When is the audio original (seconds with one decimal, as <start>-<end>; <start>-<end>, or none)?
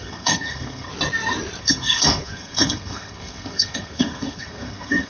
0.9-1.6